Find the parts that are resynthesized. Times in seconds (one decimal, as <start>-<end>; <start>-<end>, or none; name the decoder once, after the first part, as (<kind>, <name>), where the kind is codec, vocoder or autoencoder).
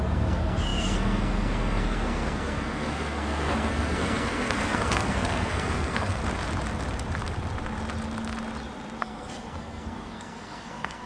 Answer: 0.0-6.2 (codec, SNAC); 9.0-11.1